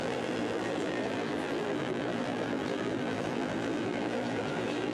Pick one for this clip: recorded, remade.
remade